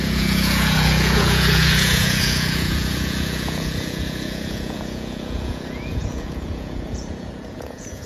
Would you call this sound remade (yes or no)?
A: yes